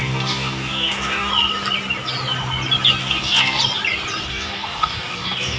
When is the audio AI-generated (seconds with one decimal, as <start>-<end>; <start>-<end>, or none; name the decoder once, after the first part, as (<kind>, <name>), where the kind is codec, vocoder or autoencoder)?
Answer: 0.0-1.3 (codec, DAC); 3.0-3.6; 4.3-5.6